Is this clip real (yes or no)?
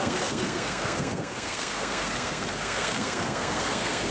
no